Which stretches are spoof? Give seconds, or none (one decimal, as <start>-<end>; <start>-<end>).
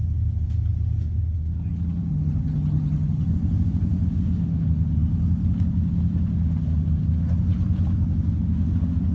2.1-3.3